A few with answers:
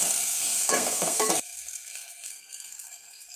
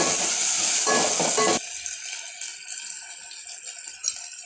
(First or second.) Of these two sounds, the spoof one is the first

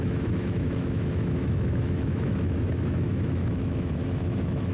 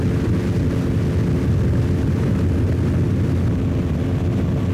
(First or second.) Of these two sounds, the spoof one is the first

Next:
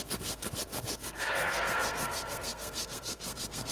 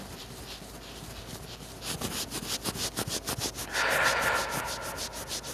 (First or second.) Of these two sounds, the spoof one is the first